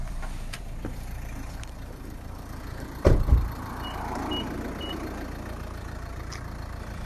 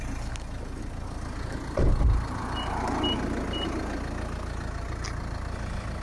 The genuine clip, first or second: second